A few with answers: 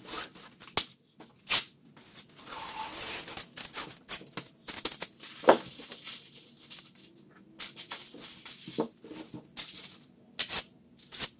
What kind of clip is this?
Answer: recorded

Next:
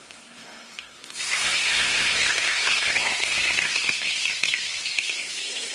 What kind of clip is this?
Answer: remade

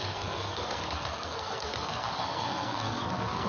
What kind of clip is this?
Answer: remade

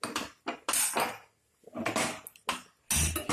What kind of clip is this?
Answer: recorded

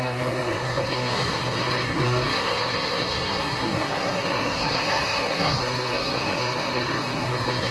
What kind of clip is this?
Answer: remade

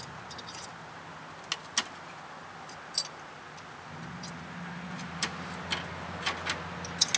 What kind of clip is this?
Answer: recorded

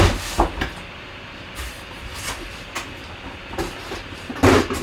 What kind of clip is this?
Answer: recorded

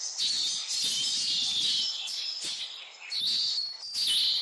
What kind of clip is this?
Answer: recorded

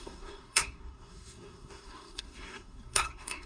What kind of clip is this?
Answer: remade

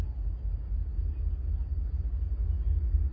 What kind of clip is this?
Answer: recorded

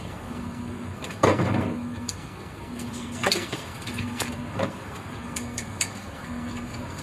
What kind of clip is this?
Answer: remade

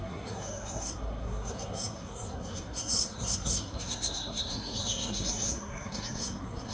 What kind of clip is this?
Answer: remade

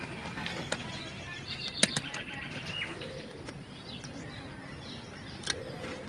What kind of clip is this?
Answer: recorded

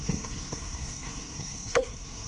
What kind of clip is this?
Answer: remade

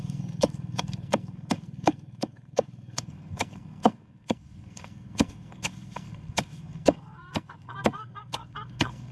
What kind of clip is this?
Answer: remade